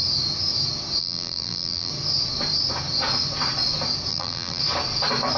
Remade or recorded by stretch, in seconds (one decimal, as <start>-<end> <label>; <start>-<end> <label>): 0.0-1.0 recorded; 1.0-1.9 remade; 1.9-4.1 recorded; 4.1-4.6 remade; 4.6-5.4 recorded